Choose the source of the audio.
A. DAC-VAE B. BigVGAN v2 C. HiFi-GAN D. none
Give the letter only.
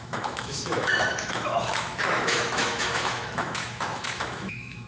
A